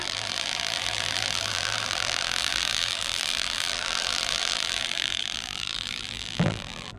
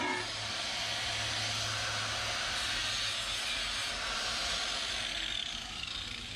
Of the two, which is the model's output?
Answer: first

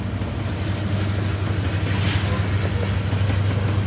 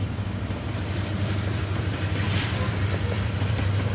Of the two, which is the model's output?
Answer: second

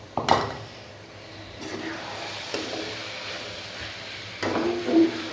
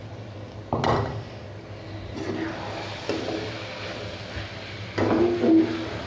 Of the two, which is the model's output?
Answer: first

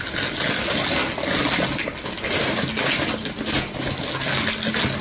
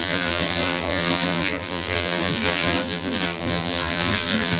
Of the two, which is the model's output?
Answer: second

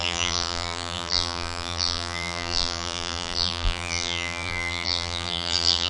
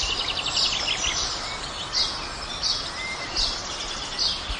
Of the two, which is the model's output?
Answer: first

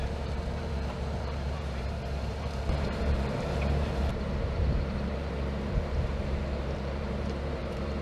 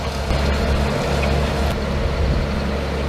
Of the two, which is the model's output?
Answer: first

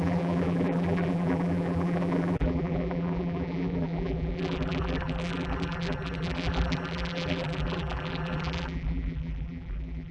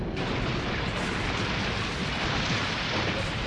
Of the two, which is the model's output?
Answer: first